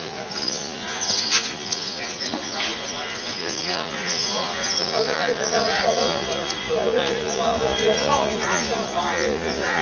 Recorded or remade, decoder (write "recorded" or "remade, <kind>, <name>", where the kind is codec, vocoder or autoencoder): remade, vocoder, Vocos